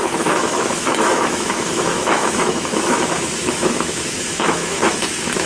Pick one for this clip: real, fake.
fake